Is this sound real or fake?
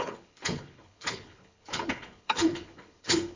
fake